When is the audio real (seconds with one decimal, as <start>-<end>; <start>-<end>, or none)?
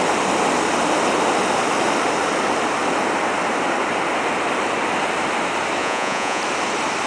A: 0.0-5.8; 6.4-7.1